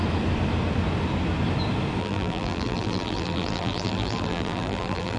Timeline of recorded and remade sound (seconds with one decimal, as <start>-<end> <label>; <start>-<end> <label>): 0.0-2.0 recorded; 2.0-5.2 remade